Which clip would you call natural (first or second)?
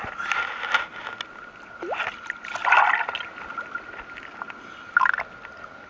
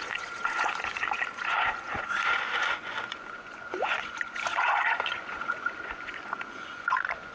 first